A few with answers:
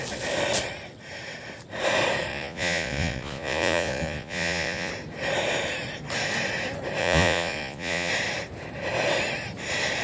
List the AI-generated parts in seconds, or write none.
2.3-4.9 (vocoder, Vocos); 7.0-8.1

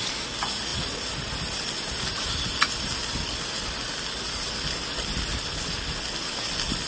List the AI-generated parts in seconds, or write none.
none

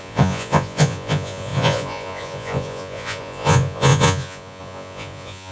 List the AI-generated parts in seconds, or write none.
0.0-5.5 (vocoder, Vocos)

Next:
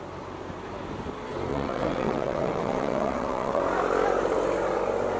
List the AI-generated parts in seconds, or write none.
1.5-3.6 (vocoder, WaveNeXt)